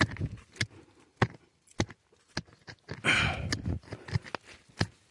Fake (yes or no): no